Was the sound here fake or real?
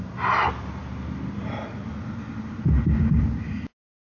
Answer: real